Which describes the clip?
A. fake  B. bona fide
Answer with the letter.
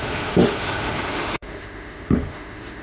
A